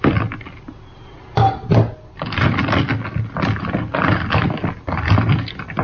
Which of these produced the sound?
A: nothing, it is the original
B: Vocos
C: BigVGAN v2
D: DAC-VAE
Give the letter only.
A